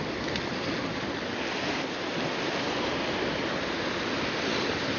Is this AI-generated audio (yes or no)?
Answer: no